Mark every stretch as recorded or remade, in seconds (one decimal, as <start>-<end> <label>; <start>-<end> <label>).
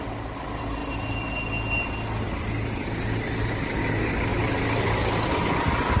0.0-6.0 recorded